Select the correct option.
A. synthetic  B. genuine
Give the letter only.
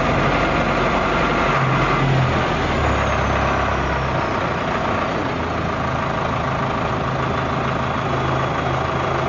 B